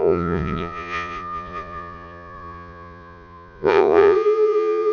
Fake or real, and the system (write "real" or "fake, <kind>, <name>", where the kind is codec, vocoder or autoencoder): fake, vocoder, Vocos